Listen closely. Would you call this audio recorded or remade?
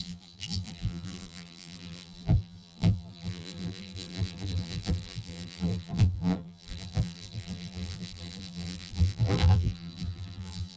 remade